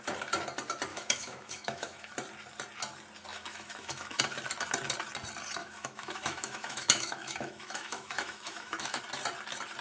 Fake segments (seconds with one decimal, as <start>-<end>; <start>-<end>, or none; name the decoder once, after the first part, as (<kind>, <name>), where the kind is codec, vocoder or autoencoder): 0.9-2.1 (autoencoder, DAC-VAE); 3.3-4.2; 5.6-9.0